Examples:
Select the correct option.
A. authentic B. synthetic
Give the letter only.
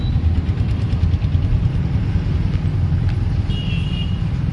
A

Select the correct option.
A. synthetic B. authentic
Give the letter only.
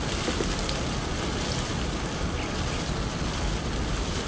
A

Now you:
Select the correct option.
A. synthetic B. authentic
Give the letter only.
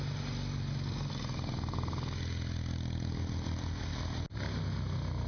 B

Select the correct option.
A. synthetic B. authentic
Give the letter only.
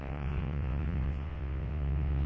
A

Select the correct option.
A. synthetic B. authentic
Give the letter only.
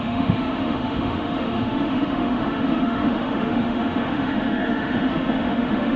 A